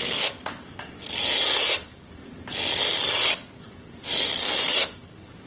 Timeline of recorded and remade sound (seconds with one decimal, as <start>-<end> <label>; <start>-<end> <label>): 0.0-5.5 recorded